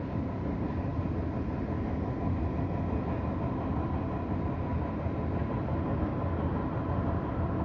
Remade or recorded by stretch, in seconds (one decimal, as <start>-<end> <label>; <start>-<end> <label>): 0.0-7.6 recorded

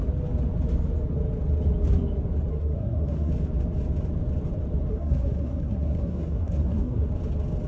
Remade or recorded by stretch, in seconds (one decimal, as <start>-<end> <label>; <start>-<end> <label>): 0.0-2.5 recorded; 2.5-3.3 remade; 3.3-4.9 recorded; 4.9-7.1 remade; 7.1-7.7 recorded

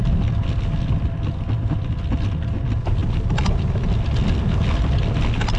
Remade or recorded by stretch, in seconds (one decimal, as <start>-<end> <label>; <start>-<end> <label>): 0.0-5.6 recorded

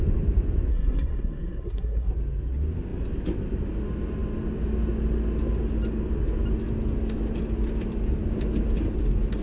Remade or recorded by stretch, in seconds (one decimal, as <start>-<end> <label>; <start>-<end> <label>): 0.0-0.7 recorded; 0.7-2.1 remade; 2.1-9.4 recorded

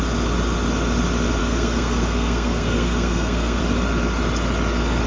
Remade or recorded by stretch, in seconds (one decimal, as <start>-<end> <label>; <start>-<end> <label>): 0.0-1.4 recorded; 1.4-3.6 remade; 3.6-5.1 recorded